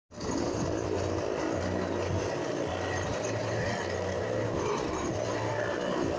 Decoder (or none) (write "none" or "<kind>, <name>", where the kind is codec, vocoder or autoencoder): none